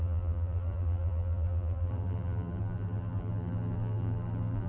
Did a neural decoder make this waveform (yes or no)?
yes